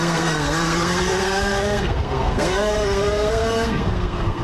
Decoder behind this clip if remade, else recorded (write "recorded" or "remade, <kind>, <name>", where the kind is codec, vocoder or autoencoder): remade, codec, SNAC